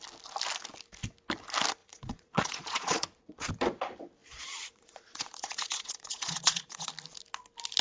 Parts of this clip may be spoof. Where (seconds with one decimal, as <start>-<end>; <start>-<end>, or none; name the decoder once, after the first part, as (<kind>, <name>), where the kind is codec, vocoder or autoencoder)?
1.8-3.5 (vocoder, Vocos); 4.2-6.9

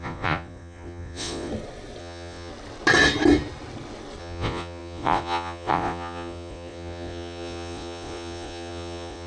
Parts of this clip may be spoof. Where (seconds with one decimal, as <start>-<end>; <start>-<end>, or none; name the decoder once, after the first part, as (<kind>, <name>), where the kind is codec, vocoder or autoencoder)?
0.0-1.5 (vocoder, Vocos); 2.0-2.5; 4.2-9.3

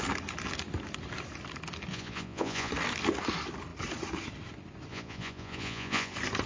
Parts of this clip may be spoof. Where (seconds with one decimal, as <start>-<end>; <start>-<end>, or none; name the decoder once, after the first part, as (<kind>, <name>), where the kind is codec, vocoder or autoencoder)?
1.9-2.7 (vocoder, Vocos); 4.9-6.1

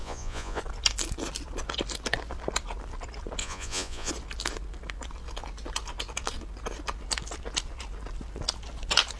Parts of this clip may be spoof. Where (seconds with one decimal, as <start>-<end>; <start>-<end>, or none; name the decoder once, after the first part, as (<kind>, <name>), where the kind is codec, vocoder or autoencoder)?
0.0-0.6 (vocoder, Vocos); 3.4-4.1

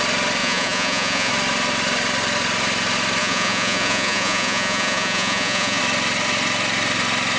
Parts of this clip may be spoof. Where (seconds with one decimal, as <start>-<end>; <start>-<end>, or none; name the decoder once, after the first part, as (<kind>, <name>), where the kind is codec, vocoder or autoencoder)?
0.4-1.3 (vocoder, Vocos); 3.2-5.8